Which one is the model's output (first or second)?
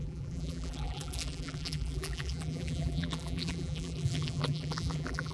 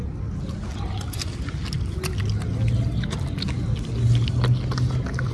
first